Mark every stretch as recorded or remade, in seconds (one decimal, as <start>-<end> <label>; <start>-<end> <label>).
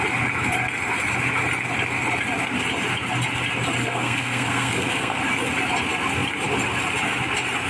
0.0-3.8 recorded; 3.8-5.2 remade; 5.2-7.7 recorded